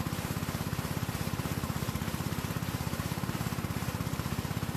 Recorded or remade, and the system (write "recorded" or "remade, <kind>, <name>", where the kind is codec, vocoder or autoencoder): remade, vocoder, BigVGAN v2